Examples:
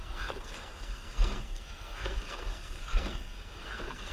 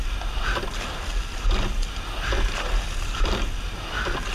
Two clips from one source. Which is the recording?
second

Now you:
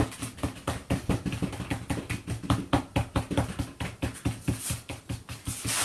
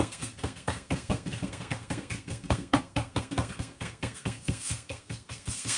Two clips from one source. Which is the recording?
first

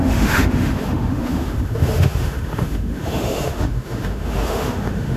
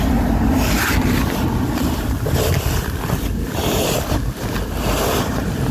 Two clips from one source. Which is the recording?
second